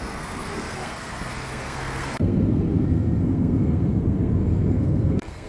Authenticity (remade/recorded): remade